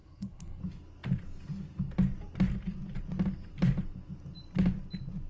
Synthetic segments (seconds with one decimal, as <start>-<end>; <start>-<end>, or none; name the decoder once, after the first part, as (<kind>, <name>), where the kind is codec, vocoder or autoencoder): 0.0-0.6 (codec, SNAC)